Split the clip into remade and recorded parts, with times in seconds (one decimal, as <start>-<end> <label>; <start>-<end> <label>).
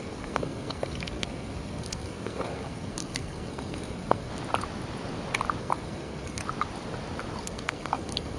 0.0-4.3 remade; 4.3-5.6 recorded; 5.6-6.4 remade; 6.4-7.4 recorded; 7.4-8.4 remade